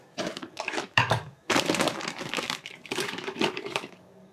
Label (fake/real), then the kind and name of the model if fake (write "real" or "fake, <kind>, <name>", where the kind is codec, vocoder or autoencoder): fake, codec, DAC